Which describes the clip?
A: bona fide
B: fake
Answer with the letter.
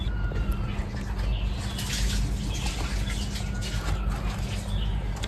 A